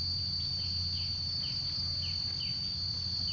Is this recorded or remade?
recorded